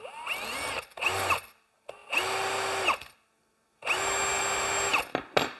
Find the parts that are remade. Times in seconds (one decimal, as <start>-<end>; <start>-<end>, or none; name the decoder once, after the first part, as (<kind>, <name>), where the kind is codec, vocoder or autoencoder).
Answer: none